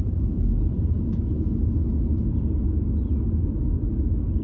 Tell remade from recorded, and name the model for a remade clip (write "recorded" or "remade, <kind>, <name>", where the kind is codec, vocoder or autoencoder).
recorded